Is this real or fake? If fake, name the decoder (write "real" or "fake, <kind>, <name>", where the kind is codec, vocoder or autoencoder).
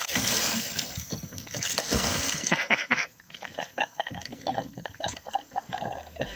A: fake, codec, SNAC